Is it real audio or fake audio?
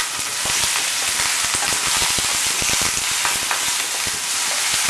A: real